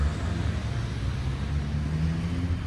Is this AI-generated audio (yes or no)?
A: no